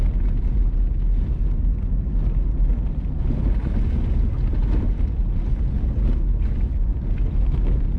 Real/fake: real